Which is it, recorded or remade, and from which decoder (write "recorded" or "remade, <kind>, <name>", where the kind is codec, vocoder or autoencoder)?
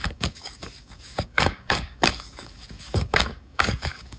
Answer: remade, codec, DAC